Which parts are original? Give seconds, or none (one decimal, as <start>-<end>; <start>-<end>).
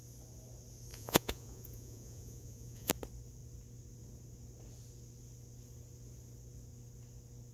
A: 0.0-0.9; 2.9-7.5